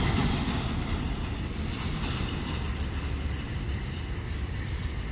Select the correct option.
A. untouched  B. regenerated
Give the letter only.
A